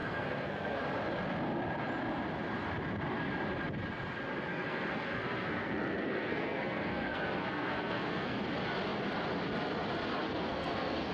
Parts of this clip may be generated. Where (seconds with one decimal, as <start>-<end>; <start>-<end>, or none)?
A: 0.0-0.8; 4.5-8.4; 10.2-11.1